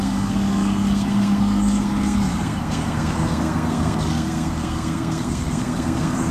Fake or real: fake